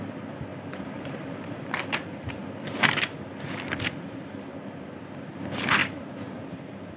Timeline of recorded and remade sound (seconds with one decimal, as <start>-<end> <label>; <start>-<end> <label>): 0.0-0.5 recorded; 0.5-1.6 remade; 1.6-5.8 recorded; 5.8-7.0 remade